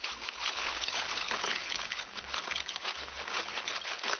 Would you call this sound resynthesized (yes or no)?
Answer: yes